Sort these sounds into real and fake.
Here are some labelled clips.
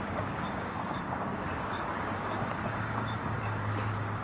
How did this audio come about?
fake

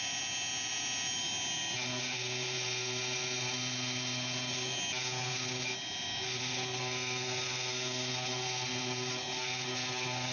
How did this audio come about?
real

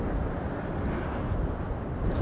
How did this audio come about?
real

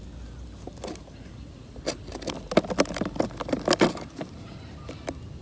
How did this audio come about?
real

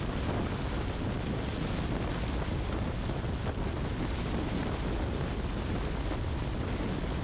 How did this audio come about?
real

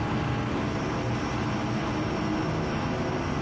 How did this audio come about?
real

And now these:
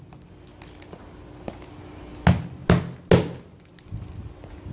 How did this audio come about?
real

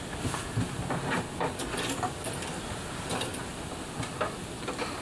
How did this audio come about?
real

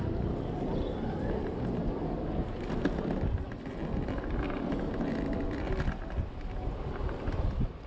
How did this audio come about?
real